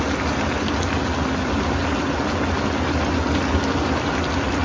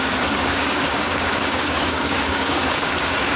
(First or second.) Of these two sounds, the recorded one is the first